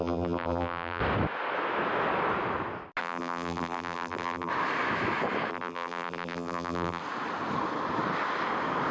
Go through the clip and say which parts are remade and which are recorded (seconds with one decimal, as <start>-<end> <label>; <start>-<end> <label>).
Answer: 0.0-1.0 remade; 1.0-3.0 recorded; 3.0-4.5 remade; 4.5-5.5 recorded; 5.5-7.0 remade; 7.0-8.9 recorded